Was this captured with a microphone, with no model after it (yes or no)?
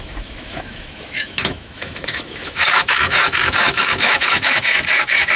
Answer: no